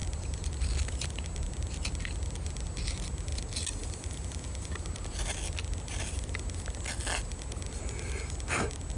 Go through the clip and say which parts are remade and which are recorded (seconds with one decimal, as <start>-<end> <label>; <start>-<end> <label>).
0.0-9.0 recorded